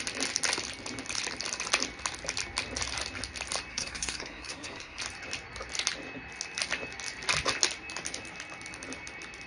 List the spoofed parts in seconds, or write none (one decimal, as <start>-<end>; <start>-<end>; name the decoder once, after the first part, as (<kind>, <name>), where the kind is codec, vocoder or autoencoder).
3.7-5.0 (codec, SNAC)